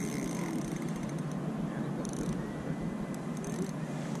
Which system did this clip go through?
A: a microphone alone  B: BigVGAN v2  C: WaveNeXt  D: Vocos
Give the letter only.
A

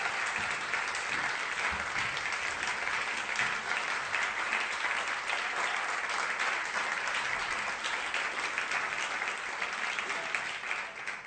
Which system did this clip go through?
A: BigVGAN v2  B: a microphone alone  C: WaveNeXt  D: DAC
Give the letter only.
B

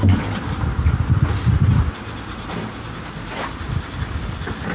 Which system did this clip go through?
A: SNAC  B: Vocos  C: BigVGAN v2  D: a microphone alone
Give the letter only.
C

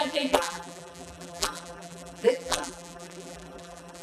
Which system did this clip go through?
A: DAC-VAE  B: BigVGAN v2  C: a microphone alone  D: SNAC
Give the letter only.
B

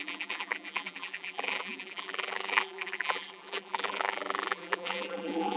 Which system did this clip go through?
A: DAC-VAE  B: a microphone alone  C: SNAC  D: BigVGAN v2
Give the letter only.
D